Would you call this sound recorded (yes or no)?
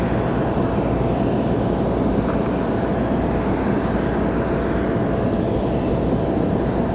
yes